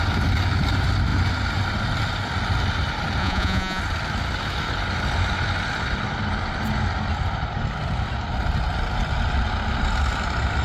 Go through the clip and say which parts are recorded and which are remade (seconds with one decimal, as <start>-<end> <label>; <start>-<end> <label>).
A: 0.0-3.2 recorded; 3.2-3.8 remade; 3.8-10.6 recorded